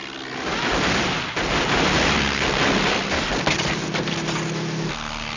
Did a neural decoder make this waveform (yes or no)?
no